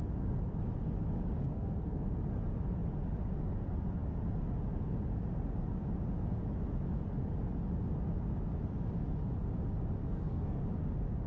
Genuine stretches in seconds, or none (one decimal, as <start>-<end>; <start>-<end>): 0.0-1.5; 2.1-10.0; 10.6-11.3